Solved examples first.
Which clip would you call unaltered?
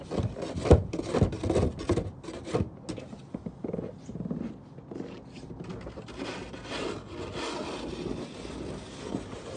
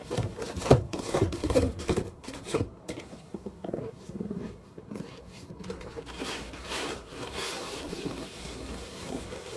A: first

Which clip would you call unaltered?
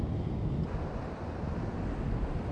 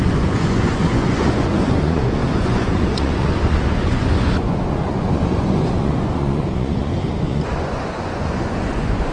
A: first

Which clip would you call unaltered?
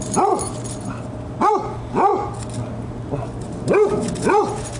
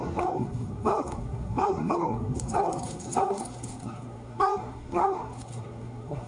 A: first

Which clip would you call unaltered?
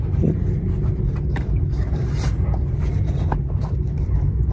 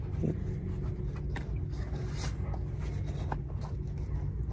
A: second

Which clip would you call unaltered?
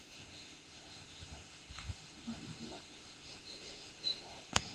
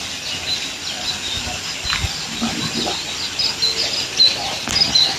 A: second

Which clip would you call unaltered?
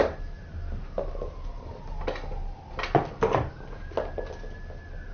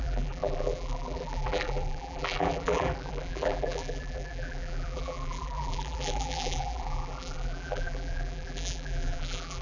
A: first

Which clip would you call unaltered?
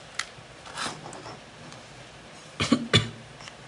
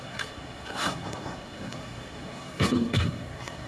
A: first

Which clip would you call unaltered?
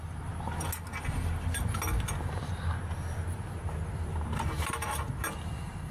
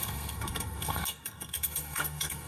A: first